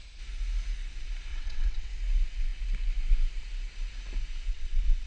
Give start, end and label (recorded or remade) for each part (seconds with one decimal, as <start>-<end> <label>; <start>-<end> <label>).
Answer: 0.0-1.3 recorded; 1.3-1.9 remade; 1.9-4.5 recorded; 4.5-5.1 remade